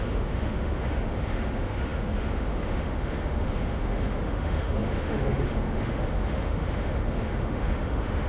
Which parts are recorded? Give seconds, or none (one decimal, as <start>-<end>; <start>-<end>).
none